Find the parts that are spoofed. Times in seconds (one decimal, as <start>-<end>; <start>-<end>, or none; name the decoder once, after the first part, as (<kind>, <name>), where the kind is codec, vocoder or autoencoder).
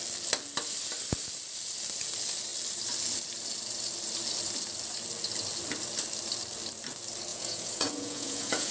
7.3-8.7 (vocoder, Vocos)